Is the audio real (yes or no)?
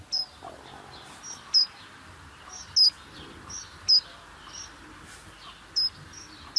yes